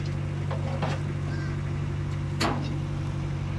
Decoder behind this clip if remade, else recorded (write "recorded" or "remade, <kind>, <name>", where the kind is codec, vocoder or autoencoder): recorded